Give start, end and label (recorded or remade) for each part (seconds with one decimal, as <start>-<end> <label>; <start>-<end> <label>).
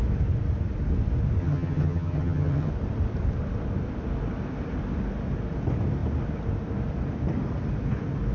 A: 0.0-1.4 recorded; 1.4-2.7 remade; 2.7-8.3 recorded